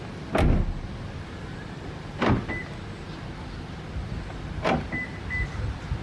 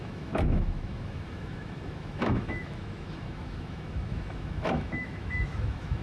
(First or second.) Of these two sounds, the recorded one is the first